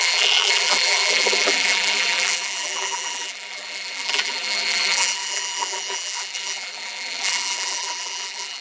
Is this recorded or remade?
remade